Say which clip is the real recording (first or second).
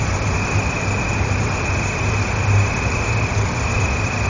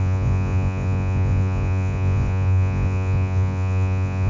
first